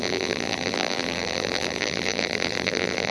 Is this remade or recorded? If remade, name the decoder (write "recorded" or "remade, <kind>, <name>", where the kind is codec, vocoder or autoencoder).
remade, vocoder, BigVGAN v2